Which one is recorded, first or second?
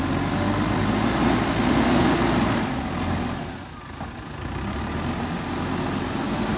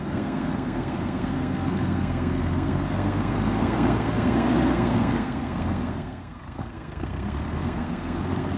first